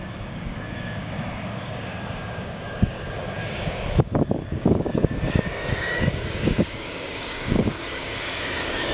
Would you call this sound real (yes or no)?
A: no